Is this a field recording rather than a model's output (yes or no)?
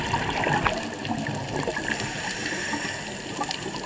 yes